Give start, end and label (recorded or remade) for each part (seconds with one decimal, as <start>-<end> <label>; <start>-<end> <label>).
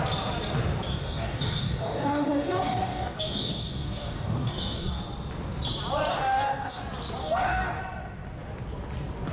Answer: 0.0-0.9 recorded; 0.9-5.0 remade; 5.0-6.1 recorded; 6.1-6.8 remade; 6.8-7.2 recorded; 7.2-7.8 remade; 7.8-9.3 recorded